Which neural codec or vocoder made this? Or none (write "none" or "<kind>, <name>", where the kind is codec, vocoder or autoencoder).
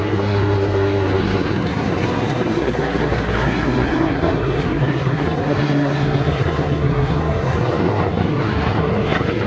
codec, SNAC